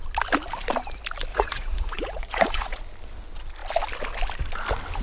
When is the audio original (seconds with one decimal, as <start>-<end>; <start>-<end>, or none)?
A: 0.0-1.3; 2.8-5.0